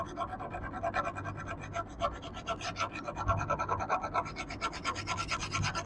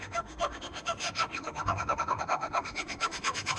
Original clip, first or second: first